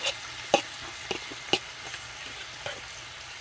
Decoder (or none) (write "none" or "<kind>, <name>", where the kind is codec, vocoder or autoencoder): none